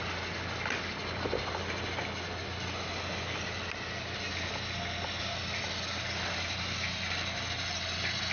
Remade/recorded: recorded